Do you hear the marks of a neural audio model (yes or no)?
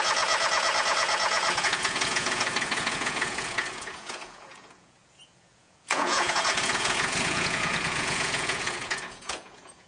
yes